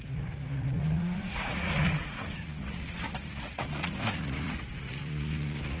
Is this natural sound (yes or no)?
no